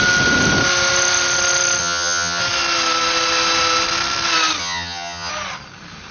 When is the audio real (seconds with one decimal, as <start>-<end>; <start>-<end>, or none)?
0.0-1.8; 2.4-4.6; 5.3-6.1